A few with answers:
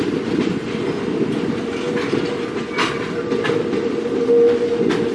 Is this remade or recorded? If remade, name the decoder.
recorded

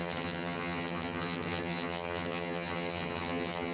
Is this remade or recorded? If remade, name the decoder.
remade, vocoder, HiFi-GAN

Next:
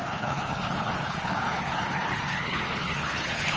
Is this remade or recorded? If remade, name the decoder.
remade, codec, HILCodec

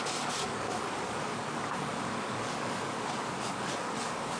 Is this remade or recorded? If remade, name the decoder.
remade, codec, DAC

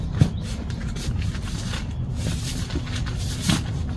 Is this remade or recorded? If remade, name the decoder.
recorded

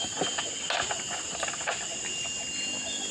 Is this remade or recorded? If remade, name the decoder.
recorded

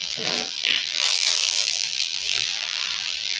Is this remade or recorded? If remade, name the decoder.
remade, vocoder, BigVGAN v2